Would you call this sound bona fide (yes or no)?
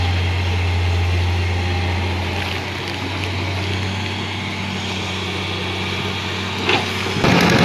yes